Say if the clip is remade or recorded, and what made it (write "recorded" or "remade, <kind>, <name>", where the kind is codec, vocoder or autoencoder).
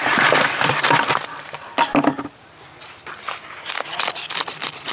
remade, vocoder, BigVGAN v2